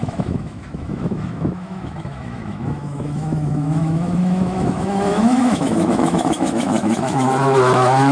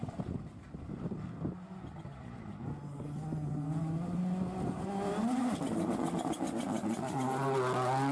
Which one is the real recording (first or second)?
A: second